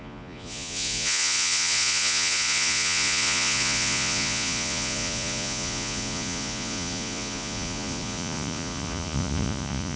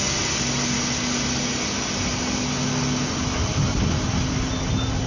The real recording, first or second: second